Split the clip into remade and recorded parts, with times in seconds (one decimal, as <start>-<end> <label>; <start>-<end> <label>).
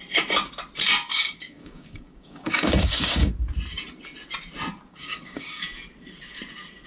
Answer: 0.0-1.1 recorded; 1.1-3.3 remade; 3.3-4.9 recorded; 4.9-5.6 remade; 5.6-6.9 recorded